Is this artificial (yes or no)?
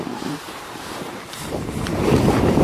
yes